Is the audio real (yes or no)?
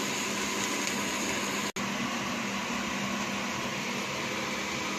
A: yes